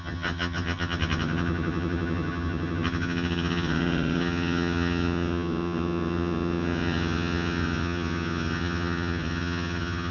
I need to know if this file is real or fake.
fake